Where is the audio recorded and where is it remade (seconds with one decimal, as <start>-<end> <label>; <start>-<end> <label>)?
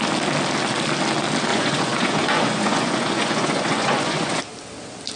0.0-1.5 recorded; 1.5-4.4 remade; 4.4-5.2 recorded